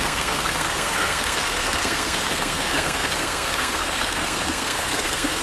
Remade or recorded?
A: remade